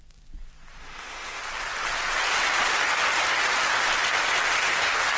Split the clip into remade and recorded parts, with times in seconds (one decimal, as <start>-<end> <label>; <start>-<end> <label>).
0.0-0.8 recorded; 0.8-1.4 remade; 1.4-5.2 recorded